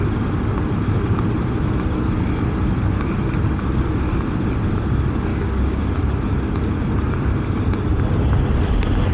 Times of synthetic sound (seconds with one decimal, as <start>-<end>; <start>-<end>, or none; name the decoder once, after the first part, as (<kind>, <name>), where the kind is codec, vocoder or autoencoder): 5.3-5.8 (codec, DAC)